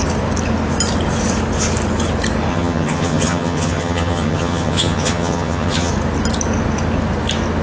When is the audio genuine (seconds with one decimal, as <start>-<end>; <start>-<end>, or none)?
0.0-2.5; 5.9-7.6